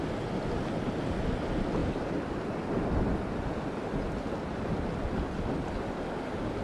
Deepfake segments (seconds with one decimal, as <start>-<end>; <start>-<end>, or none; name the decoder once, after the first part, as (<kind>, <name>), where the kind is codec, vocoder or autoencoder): none